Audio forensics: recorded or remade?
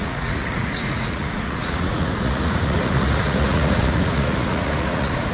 remade